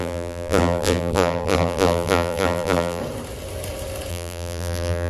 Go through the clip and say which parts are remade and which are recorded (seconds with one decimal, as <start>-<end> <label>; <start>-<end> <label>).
0.0-3.0 remade; 3.0-4.1 recorded; 4.1-5.1 remade